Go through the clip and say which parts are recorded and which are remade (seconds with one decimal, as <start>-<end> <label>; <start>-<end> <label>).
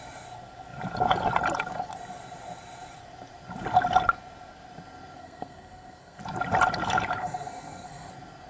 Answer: 0.0-5.2 recorded; 5.2-6.2 remade; 6.2-7.2 recorded; 7.2-8.1 remade; 8.1-8.5 recorded